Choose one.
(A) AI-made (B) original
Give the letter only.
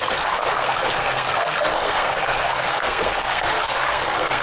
A